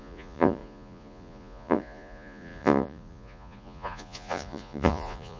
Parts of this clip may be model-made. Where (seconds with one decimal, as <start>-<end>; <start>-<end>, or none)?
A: 0.0-5.4